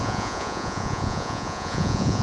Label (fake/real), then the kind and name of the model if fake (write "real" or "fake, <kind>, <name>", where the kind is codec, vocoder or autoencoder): fake, vocoder, Vocos